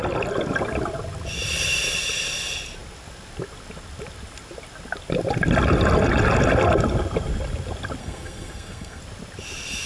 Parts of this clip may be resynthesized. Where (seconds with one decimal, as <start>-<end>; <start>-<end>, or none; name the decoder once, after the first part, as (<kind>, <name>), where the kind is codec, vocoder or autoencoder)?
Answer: 8.0-9.0 (codec, SNAC)